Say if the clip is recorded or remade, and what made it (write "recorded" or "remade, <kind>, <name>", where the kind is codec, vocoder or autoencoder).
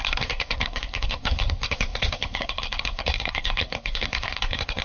remade, codec, SNAC